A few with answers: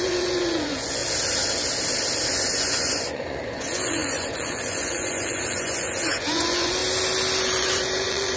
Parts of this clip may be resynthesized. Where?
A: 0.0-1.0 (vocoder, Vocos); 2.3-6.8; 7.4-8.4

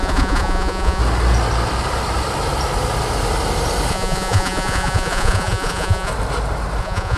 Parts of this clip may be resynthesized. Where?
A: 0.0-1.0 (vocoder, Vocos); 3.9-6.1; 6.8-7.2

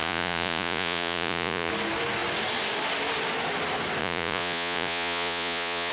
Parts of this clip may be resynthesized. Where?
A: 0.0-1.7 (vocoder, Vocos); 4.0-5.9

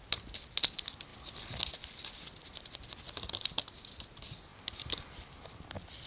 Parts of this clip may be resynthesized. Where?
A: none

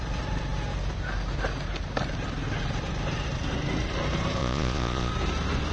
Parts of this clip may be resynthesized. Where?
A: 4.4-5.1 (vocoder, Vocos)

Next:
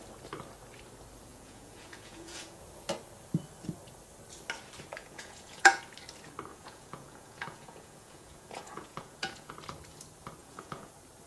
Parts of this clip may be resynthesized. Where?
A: 1.3-2.6 (vocoder, Vocos); 5.0-5.8; 6.5-9.5; 10.4-10.9

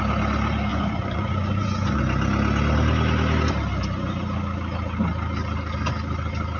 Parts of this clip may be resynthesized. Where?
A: 0.7-2.0 (vocoder, Vocos)

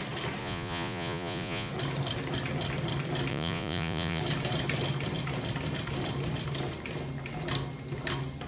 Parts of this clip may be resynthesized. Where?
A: 0.4-1.7 (vocoder, Vocos); 3.3-4.2